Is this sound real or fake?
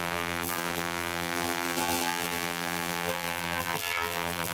fake